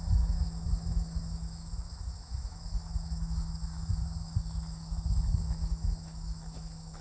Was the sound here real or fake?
fake